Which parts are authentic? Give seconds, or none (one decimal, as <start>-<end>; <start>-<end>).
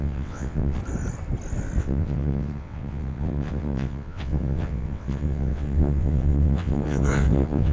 0.8-1.8